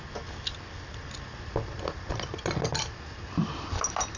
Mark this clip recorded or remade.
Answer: recorded